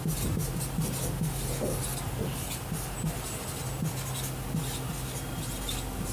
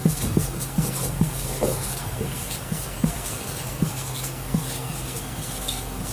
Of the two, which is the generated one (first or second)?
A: second